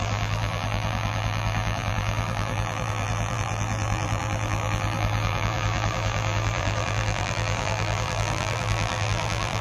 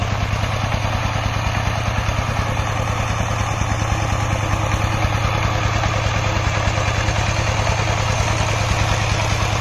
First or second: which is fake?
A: first